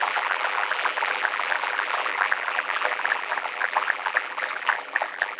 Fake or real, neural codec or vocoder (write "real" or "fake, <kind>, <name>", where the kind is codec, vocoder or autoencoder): fake, vocoder, BigVGAN v2